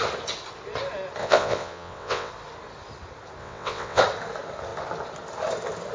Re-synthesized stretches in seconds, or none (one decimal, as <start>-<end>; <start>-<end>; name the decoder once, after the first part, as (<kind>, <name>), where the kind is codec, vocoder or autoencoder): 1.2-2.3 (vocoder, WaveNeXt); 3.4-4.0